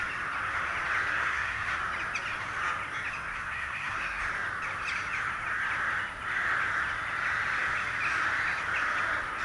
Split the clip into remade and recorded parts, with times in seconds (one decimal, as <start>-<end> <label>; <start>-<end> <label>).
0.0-1.1 recorded; 1.1-1.8 remade; 1.8-3.3 recorded; 3.3-4.2 remade; 4.2-9.4 recorded